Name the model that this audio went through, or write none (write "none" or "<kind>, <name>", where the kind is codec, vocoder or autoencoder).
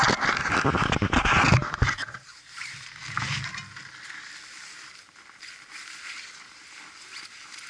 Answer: none